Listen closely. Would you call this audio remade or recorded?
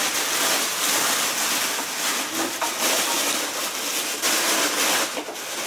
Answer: recorded